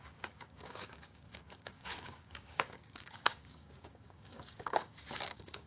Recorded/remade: remade